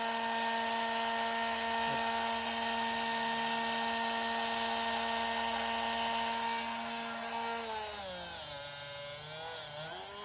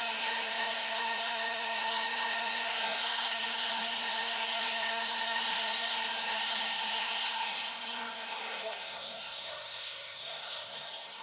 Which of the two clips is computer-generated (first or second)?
second